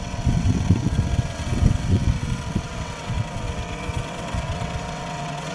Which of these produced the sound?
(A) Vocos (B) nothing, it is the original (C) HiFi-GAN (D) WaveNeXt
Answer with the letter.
D